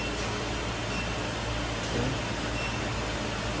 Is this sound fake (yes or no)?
no